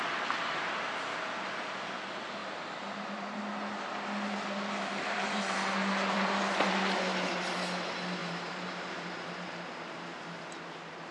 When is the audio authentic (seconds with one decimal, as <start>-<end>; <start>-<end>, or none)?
0.0-2.4; 3.4-8.2